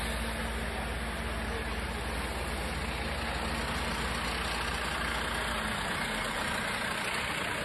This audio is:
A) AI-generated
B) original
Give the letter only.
B